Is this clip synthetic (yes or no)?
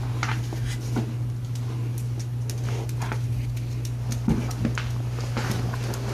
no